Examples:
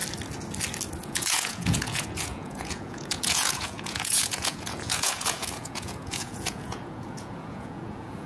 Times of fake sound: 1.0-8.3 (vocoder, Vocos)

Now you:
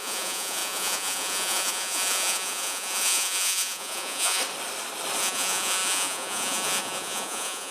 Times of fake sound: 0.0-4.4 (vocoder, Vocos); 5.2-7.7

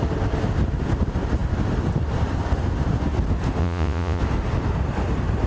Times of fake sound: 3.6-4.2 (vocoder, Vocos)

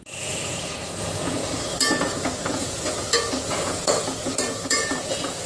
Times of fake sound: 0.0-1.4 (vocoder, Vocos); 2.0-5.5

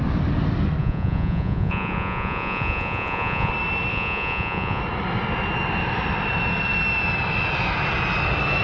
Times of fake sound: 0.8-3.5 (vocoder, Vocos); 3.9-4.8

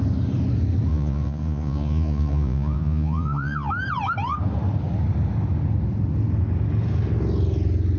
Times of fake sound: 0.9-3.7 (vocoder, Vocos)

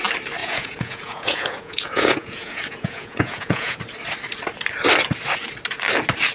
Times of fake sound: 0.4-3.8 (vocoder, Vocos)